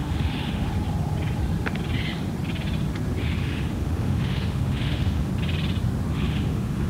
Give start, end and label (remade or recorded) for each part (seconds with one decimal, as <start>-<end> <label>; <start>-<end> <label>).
0.0-0.7 remade; 0.7-3.2 recorded; 3.2-5.3 remade; 5.3-6.1 recorded; 6.1-6.9 remade